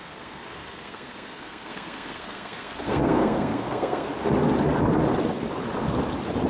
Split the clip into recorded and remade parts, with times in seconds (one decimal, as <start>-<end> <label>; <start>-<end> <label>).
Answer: 0.0-4.1 remade; 4.1-6.5 recorded